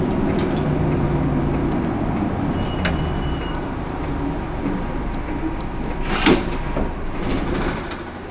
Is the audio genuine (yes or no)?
yes